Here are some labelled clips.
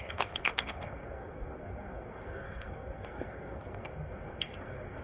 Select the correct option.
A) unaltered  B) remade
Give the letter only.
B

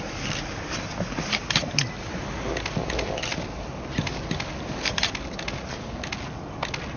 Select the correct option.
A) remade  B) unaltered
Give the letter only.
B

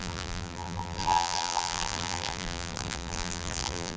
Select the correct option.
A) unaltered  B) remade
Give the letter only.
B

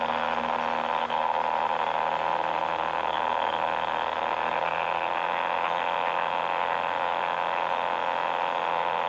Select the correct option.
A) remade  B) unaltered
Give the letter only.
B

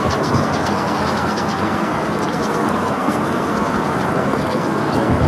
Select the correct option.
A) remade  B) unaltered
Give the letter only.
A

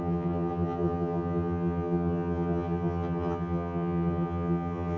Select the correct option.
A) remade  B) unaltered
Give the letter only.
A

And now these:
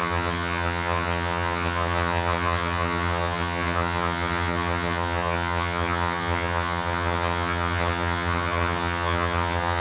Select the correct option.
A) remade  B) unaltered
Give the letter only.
A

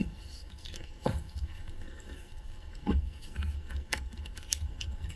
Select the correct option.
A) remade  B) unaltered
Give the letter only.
A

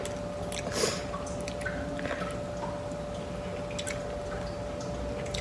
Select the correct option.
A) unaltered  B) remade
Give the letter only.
A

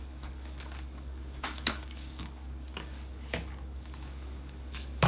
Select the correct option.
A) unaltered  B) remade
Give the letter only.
B